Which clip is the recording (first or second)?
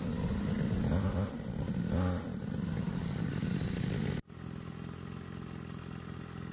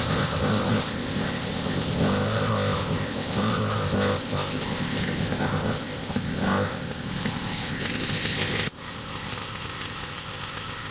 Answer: first